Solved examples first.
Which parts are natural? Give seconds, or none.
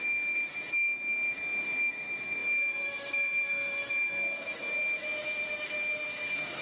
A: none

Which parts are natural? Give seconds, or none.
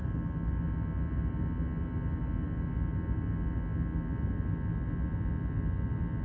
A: 0.0-6.2